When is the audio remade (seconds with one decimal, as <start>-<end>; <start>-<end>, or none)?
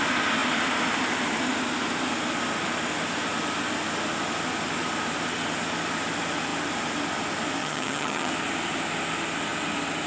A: 7.6-8.3